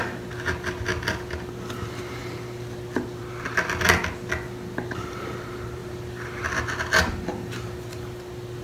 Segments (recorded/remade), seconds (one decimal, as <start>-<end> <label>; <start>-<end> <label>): 0.0-8.6 recorded